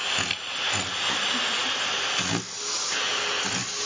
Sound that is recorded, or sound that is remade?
recorded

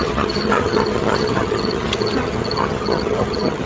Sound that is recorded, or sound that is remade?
remade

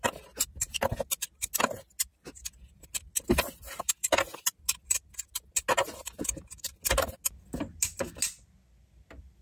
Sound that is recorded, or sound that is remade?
recorded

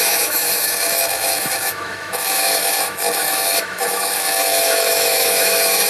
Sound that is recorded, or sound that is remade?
remade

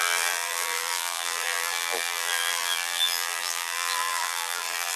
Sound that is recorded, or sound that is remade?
remade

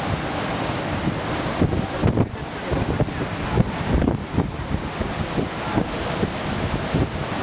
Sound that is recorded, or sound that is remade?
recorded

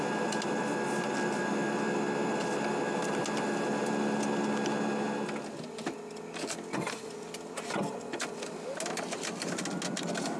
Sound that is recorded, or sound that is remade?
recorded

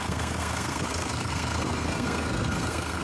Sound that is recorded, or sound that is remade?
remade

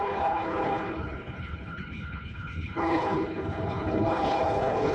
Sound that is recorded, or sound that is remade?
remade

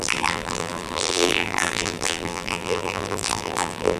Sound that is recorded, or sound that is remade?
remade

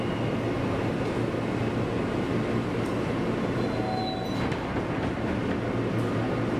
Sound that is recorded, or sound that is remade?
recorded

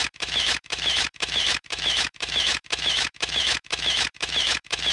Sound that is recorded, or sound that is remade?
remade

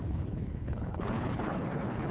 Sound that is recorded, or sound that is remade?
remade